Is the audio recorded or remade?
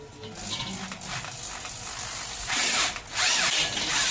recorded